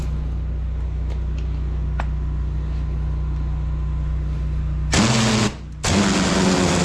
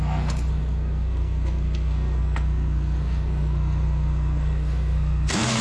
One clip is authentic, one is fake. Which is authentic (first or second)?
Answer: first